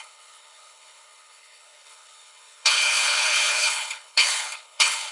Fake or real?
fake